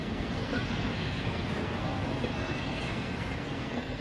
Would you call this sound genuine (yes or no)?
no